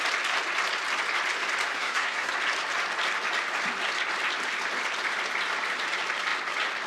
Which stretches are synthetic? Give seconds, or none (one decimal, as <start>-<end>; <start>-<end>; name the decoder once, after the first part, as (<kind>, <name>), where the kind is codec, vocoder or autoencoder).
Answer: 1.7-2.3 (codec, SNAC)